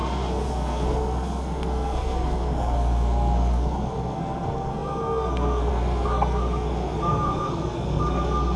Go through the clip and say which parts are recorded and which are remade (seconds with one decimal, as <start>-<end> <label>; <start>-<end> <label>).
0.0-8.6 remade